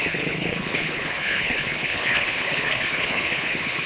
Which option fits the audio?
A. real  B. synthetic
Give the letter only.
B